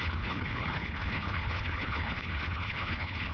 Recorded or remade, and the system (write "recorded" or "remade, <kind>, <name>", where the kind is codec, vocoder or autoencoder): remade, codec, HILCodec